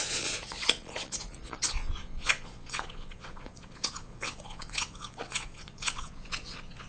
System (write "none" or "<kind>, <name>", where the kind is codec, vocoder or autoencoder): vocoder, Vocos